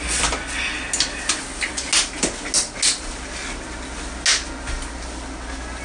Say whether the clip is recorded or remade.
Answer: recorded